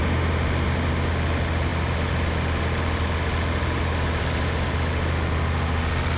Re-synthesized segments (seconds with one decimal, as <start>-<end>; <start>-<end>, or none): none